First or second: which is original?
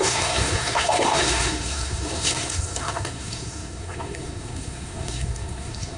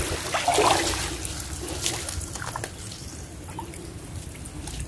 second